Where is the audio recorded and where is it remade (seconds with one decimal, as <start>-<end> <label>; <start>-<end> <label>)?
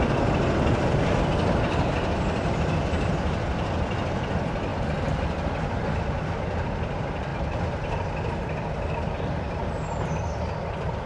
0.0-4.7 remade; 4.7-6.0 recorded; 6.0-11.1 remade